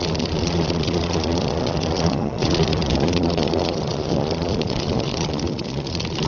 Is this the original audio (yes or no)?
no